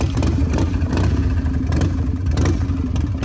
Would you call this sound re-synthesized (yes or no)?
yes